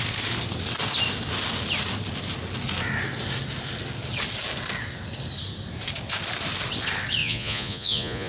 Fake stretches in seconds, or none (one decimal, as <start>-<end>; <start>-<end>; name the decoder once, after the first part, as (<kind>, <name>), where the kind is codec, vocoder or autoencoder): 7.2-8.3 (vocoder, Vocos)